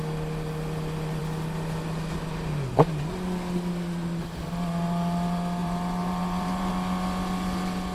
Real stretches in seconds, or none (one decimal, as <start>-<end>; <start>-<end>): 0.0-5.6; 6.7-7.9